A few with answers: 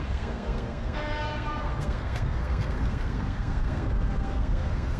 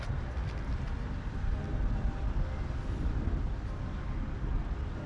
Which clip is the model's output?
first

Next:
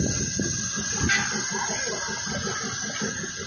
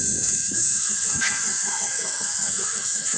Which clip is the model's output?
second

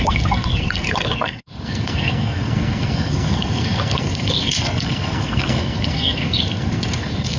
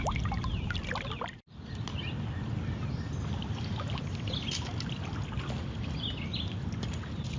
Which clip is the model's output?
first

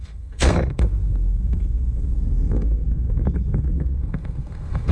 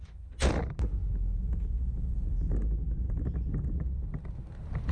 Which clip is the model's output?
first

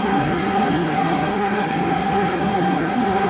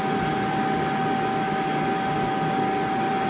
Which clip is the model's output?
first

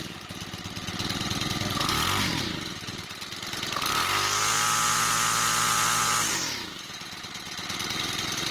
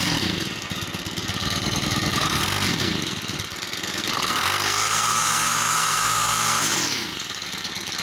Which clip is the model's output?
second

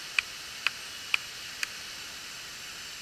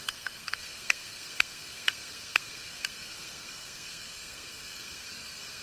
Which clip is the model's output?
second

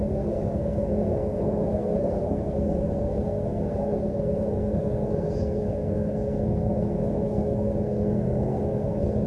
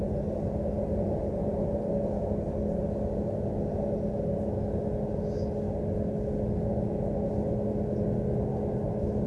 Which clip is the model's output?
first